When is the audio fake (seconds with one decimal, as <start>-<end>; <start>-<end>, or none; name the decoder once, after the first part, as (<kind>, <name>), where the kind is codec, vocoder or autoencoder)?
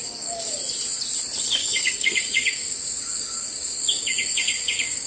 0.0-0.6 (codec, DAC); 1.6-5.1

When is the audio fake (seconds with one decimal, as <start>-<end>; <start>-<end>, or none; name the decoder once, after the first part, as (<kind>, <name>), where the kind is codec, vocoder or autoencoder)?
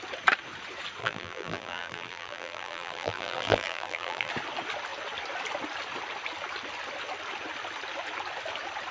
1.0-4.3 (vocoder, BigVGAN v2)